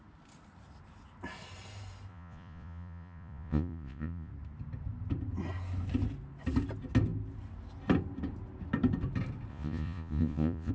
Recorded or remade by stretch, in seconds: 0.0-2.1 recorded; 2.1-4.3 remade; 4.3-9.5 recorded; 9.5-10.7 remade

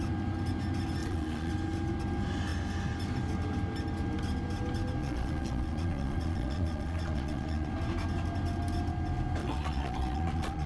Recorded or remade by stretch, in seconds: 0.0-1.0 recorded; 1.0-1.5 remade; 1.5-5.0 recorded; 5.0-7.7 remade; 7.7-9.4 recorded; 9.4-10.7 remade

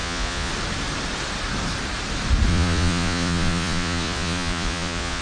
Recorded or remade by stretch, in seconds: 0.0-0.5 remade; 0.5-2.5 recorded; 2.5-5.2 remade